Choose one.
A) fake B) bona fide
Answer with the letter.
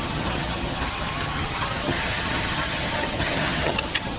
A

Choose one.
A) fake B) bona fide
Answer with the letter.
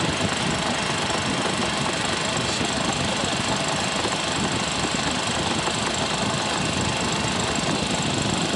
B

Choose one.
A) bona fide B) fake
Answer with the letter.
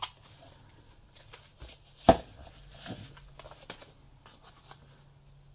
A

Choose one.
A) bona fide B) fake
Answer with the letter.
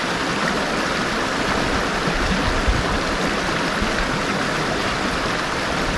A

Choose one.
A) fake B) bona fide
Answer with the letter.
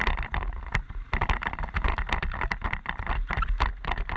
B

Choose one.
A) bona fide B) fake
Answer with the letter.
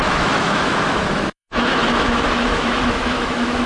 B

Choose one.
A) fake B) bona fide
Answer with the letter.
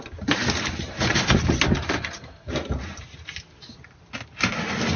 B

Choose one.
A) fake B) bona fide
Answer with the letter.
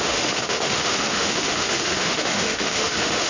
A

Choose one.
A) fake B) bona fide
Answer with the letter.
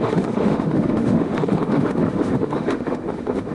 A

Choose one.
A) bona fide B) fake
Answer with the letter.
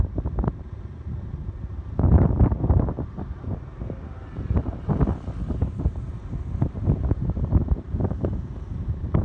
B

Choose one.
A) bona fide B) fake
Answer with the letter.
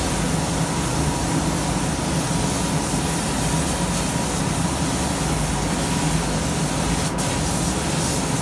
A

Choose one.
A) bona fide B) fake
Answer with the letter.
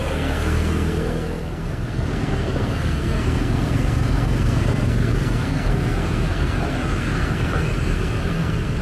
B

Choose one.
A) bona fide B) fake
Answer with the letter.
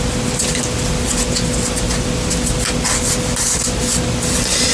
A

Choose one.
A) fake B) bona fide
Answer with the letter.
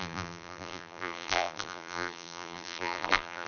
A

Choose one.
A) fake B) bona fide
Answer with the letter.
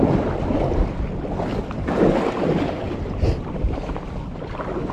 B